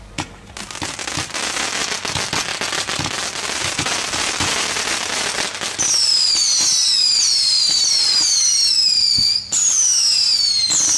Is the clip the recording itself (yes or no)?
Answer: yes